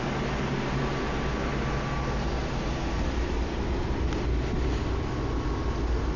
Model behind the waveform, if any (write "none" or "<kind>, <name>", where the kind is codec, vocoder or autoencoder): none